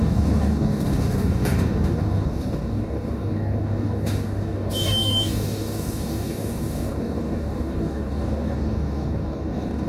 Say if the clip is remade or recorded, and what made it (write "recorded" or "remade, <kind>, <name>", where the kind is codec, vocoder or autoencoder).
remade, codec, DAC